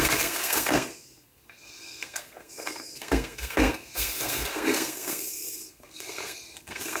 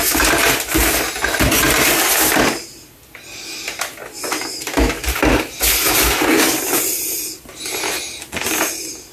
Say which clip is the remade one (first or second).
first